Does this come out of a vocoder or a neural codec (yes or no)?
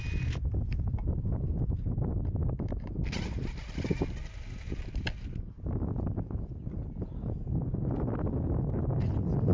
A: no